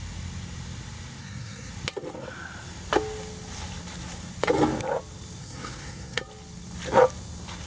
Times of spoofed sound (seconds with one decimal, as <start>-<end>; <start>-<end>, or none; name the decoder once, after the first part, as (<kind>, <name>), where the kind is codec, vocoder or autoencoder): 1.2-1.7 (codec, SNAC); 5.4-6.2